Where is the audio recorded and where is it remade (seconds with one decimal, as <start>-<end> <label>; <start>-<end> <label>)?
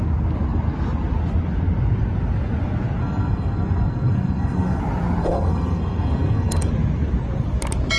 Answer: 0.0-3.0 recorded; 3.0-4.8 remade; 4.8-5.2 recorded; 5.2-6.7 remade; 6.7-8.0 recorded